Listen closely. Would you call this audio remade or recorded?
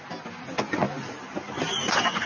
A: recorded